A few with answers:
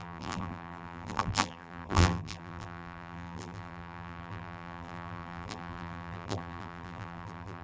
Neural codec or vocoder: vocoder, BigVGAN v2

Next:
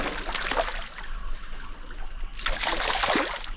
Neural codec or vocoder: none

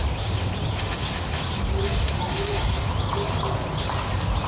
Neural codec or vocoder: none